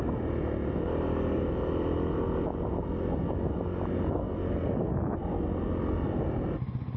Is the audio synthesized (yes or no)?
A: no